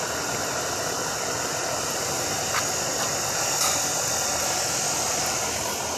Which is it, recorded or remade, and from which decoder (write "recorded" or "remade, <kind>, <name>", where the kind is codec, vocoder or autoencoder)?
recorded